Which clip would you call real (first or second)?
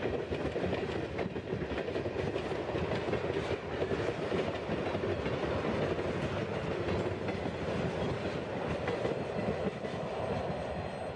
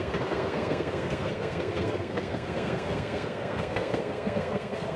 first